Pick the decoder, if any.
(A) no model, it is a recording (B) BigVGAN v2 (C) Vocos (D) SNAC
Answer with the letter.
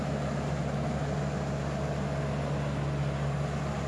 A